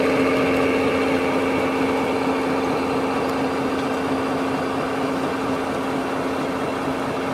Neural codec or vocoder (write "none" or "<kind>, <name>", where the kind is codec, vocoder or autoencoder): none